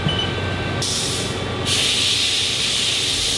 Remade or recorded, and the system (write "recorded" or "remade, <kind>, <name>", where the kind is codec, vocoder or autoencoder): recorded